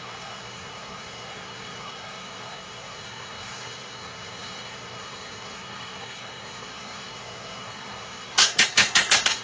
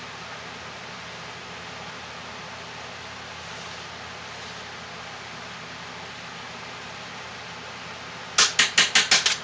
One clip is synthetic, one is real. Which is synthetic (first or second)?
first